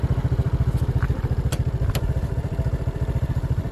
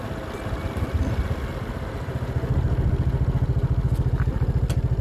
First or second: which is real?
second